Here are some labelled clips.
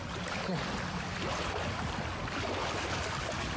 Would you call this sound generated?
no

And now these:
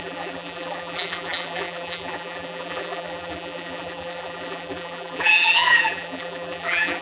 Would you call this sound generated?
yes